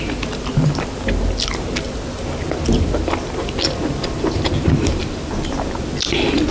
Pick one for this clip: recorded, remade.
recorded